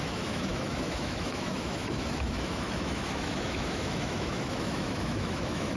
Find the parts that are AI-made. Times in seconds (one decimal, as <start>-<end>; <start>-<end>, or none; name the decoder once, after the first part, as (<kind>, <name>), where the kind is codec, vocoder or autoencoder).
0.0-5.8 (autoencoder, DAC-VAE)